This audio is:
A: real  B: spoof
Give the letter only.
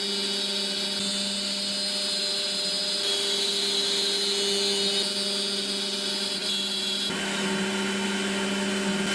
A